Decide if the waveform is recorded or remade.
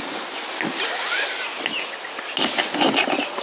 recorded